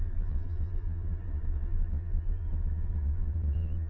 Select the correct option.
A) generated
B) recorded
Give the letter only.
A